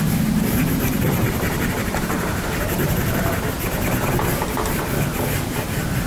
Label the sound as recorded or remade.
remade